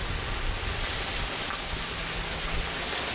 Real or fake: real